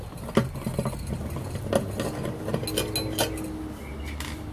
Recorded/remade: recorded